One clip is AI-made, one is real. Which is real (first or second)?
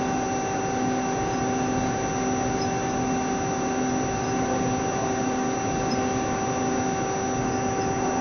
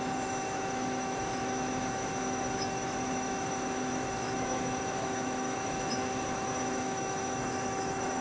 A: first